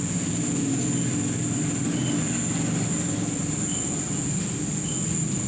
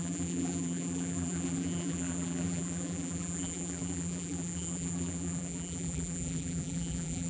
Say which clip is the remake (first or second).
second